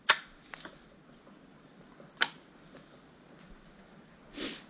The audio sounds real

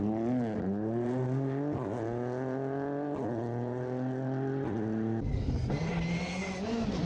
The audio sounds real